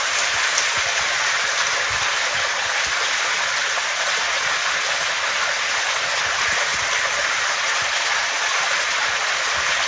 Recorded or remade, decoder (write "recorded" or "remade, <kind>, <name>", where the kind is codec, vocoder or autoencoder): recorded